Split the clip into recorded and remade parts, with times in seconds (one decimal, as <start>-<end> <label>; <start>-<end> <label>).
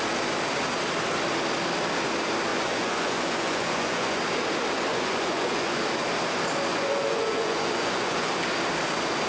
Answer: 0.0-2.5 recorded; 2.5-4.2 remade; 4.2-4.9 recorded; 4.9-5.8 remade; 5.8-6.7 recorded; 6.7-8.3 remade; 8.3-9.3 recorded